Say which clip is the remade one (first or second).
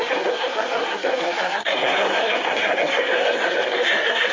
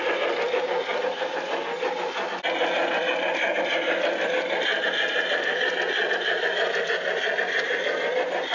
first